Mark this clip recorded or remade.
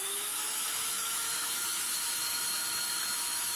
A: remade